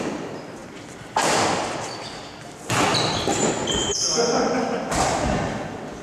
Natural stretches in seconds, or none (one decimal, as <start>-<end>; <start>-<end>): 0.0-0.6; 2.4-2.9; 3.5-6.0